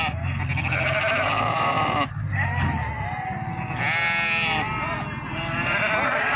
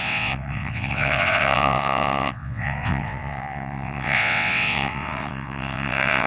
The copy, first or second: second